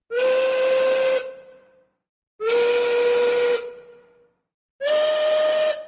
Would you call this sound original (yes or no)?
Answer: yes